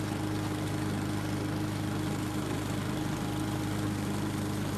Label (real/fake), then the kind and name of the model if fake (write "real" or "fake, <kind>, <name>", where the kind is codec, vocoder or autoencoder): real